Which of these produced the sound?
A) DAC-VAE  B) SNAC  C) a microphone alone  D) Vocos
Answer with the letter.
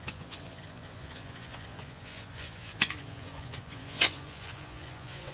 D